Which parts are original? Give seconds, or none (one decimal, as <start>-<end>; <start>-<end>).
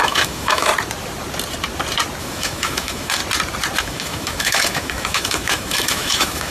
0.7-2.2; 3.2-3.8